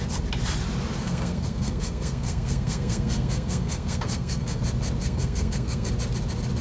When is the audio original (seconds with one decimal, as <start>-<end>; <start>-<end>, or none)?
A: 0.0-1.0; 4.6-5.0; 5.9-6.6